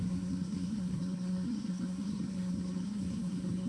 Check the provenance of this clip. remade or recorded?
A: remade